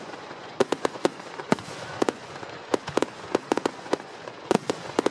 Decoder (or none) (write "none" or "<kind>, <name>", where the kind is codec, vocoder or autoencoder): vocoder, Vocos